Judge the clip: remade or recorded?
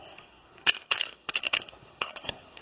remade